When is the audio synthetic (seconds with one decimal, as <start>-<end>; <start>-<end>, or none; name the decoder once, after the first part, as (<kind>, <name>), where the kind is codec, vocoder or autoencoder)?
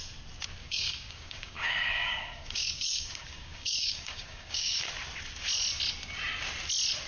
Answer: 0.6-4.9 (codec, DAC)